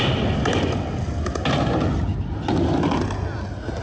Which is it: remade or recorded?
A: recorded